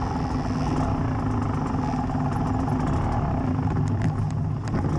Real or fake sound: real